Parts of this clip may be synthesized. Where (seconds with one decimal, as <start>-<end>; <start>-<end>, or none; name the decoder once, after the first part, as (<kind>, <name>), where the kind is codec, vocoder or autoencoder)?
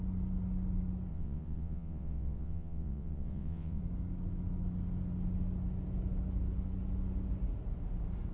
1.1-3.8 (vocoder, WaveNeXt)